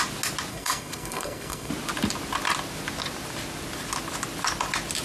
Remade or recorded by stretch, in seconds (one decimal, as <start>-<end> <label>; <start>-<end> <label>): 0.0-0.5 recorded; 0.5-1.7 remade; 1.7-5.0 recorded